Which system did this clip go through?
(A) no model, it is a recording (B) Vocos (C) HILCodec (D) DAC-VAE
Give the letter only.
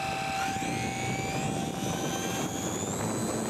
A